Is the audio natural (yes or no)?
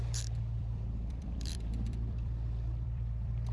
no